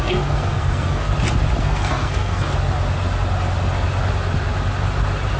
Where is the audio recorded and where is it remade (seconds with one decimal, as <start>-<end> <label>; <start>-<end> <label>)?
0.0-1.1 remade; 1.1-1.6 recorded; 1.6-2.5 remade; 2.5-5.4 recorded